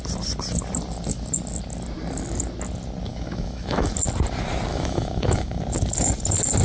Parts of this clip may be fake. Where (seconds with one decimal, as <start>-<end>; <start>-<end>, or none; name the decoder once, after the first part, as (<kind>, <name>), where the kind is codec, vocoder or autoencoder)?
3.1-3.9 (autoencoder, DAC-VAE); 4.7-5.6